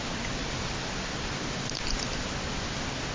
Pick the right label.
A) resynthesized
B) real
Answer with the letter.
A